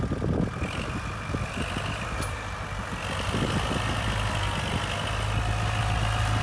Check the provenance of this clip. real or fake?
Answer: real